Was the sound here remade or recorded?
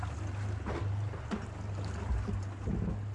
recorded